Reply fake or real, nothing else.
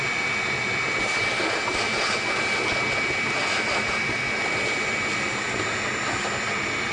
real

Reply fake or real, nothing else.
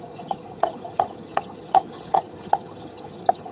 fake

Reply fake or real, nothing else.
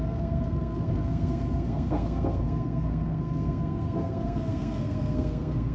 fake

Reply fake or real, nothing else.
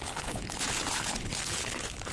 fake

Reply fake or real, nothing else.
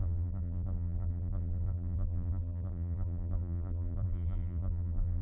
fake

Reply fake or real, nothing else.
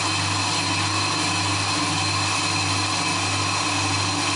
real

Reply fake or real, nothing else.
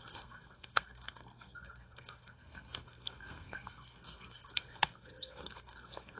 fake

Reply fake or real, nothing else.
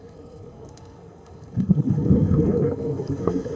fake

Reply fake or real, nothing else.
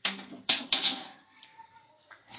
fake